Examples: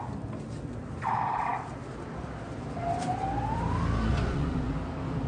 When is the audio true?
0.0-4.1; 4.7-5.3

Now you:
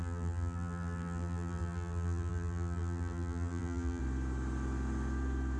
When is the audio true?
4.0-5.6